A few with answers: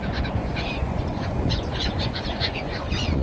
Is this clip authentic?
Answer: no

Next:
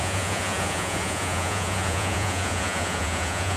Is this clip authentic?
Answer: no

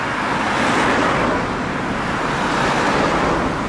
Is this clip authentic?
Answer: yes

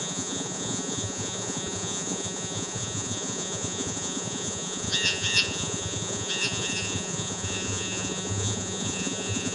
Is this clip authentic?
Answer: no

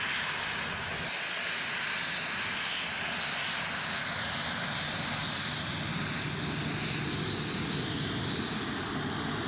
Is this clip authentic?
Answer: yes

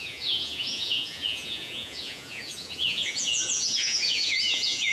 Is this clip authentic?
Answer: no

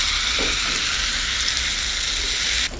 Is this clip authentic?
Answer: yes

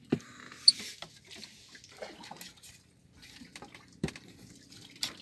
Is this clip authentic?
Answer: yes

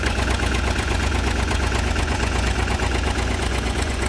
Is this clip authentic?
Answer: no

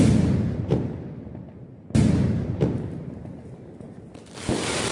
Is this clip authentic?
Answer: yes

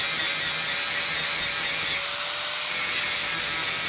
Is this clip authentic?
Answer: yes